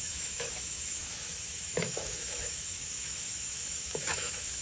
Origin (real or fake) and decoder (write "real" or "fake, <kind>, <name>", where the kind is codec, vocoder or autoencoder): fake, autoencoder, DAC-VAE